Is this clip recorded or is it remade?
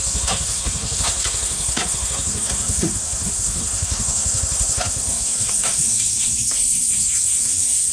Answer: remade